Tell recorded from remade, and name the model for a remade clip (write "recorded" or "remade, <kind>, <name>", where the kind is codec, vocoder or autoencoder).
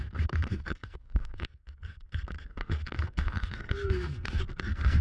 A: remade, codec, SNAC